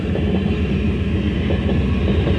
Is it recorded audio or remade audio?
recorded